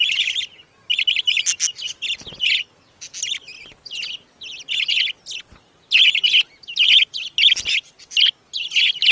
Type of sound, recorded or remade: recorded